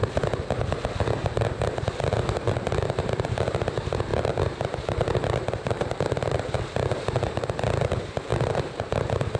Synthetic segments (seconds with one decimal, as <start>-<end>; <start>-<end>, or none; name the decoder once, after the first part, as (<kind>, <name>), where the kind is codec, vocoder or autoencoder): 1.0-9.4 (vocoder, BigVGAN v2)